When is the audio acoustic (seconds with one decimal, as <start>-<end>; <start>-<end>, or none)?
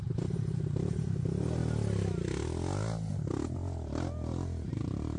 1.6-4.7